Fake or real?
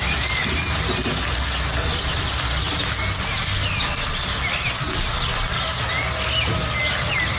real